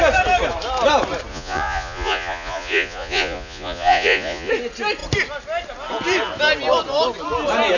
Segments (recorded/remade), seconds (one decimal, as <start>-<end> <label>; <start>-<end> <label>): 0.0-1.3 recorded; 1.3-4.5 remade; 4.5-7.8 recorded

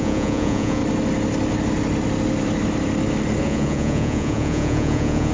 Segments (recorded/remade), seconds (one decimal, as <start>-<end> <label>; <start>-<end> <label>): 0.0-0.8 remade; 0.8-3.4 recorded; 3.4-5.3 remade